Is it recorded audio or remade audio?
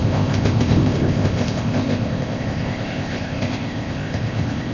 remade